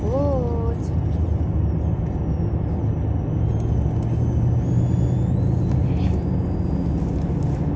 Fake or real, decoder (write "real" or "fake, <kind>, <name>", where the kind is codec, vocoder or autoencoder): real